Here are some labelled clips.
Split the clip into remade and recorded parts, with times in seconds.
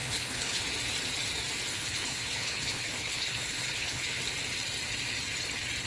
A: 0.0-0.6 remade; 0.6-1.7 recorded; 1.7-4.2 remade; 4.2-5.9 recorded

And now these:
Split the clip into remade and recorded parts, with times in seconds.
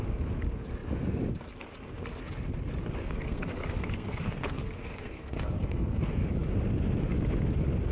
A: 0.0-3.0 recorded; 3.0-6.0 remade; 6.0-7.9 recorded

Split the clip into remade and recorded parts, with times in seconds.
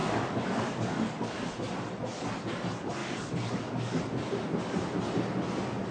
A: 0.0-1.5 remade; 1.5-3.0 recorded; 3.0-4.0 remade; 4.0-5.9 recorded